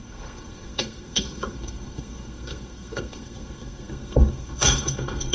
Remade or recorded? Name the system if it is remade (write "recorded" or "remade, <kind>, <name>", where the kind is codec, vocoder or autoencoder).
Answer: remade, codec, SNAC